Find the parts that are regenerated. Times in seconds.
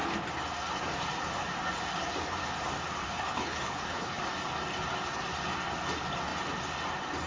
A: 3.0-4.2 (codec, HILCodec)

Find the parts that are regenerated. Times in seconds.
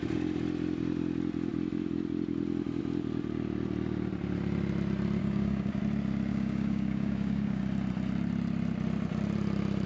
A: 5.2-5.8 (codec, DAC); 6.3-7.6